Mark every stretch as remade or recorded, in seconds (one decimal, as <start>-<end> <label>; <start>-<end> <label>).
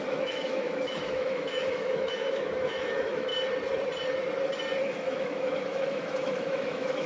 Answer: 0.0-3.3 remade; 3.3-4.8 recorded; 4.8-7.1 remade